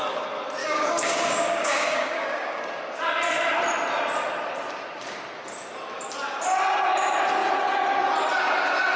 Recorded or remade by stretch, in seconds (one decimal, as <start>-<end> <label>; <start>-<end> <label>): 0.0-0.6 recorded; 0.6-2.6 remade; 2.6-9.0 recorded